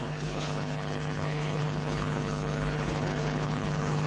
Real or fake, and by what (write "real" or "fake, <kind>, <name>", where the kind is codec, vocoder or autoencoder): fake, codec, HILCodec